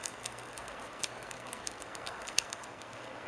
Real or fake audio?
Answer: fake